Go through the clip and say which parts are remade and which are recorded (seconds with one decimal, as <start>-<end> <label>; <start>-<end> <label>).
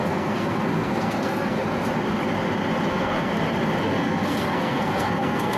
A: 0.0-1.6 remade; 1.6-2.9 recorded; 2.9-3.3 remade; 3.3-3.8 recorded; 3.8-5.6 remade